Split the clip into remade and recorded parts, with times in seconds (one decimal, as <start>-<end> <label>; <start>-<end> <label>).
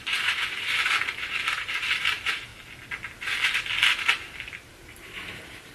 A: 0.0-2.5 remade; 2.5-4.7 recorded; 4.7-5.7 remade